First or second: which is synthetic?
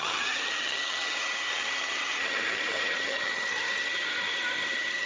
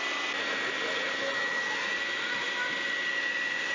first